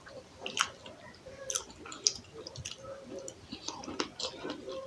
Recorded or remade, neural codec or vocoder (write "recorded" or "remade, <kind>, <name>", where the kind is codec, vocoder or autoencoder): remade, vocoder, BigVGAN v2